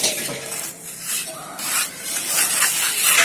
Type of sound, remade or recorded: remade